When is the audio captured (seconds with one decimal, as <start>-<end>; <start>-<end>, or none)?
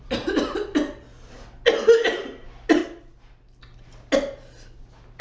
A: 0.0-2.8; 3.6-5.2